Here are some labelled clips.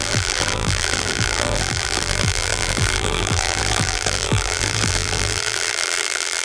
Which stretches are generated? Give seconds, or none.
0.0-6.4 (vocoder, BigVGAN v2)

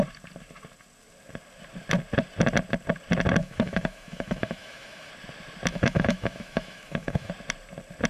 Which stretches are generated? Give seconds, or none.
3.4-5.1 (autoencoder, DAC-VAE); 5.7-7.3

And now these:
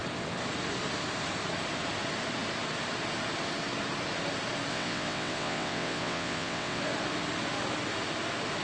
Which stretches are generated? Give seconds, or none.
4.7-6.8 (vocoder, WaveNeXt)

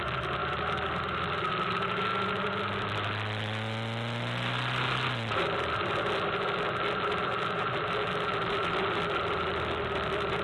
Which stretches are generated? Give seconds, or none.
none

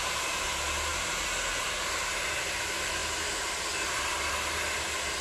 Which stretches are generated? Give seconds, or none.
none

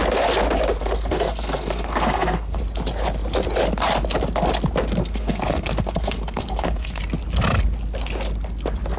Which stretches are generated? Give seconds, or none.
0.8-2.6 (codec, SNAC); 5.0-7.0